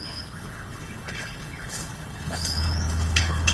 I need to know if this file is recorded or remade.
remade